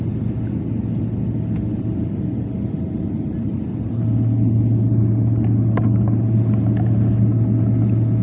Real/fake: real